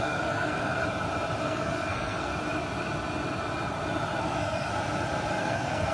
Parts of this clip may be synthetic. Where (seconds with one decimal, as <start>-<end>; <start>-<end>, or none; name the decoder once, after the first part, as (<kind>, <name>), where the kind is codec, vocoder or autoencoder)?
0.0-0.8 (codec, SNAC); 1.4-2.3; 4.2-4.7; 5.4-5.9